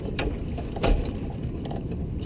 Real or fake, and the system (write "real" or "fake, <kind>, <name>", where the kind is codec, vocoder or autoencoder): real